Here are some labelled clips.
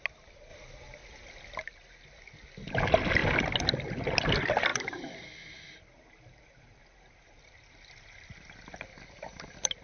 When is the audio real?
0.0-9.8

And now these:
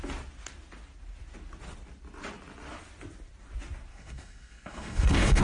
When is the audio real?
0.0-3.9

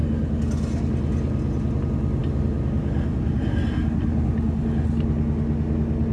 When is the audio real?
0.0-6.1